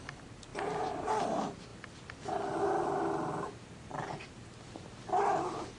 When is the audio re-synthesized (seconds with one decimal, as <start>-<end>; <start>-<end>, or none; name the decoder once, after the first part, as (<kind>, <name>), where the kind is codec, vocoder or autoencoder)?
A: none

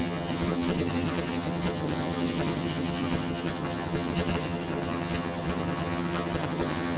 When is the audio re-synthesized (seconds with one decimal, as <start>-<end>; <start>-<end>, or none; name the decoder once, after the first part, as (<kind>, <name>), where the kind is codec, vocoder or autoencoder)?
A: 0.0-7.0 (vocoder, HiFi-GAN)

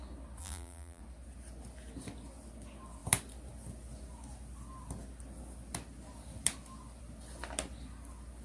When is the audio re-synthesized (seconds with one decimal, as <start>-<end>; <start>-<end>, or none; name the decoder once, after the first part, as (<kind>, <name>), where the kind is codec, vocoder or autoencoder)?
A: 0.4-1.0 (vocoder, BigVGAN v2)